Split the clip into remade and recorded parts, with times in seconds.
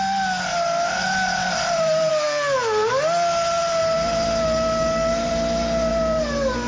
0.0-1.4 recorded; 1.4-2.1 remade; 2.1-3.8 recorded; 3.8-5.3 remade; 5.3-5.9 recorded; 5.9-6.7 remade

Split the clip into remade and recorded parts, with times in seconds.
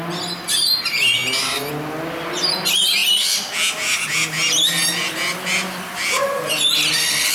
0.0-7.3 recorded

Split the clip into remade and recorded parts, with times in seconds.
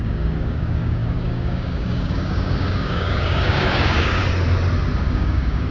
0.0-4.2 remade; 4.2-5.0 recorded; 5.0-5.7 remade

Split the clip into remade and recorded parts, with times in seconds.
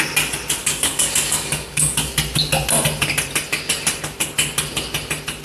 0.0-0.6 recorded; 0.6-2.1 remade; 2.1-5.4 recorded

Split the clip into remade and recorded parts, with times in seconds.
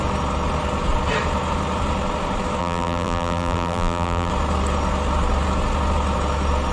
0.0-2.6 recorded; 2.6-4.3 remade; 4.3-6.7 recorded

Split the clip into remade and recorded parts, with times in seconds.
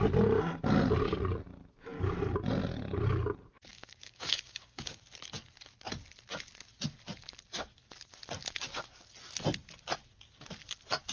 0.0-3.7 recorded; 3.7-5.0 remade; 5.0-11.1 recorded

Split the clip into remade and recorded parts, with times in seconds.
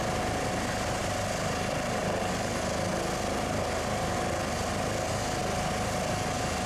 0.0-6.7 recorded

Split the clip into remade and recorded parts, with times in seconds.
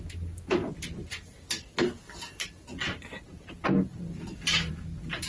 0.0-0.6 recorded; 0.6-3.5 remade; 3.5-3.9 recorded; 3.9-4.7 remade; 4.7-5.3 recorded